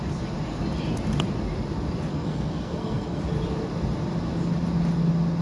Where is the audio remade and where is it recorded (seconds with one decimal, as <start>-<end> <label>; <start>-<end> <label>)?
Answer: 0.0-2.1 recorded; 2.1-3.2 remade; 3.2-5.4 recorded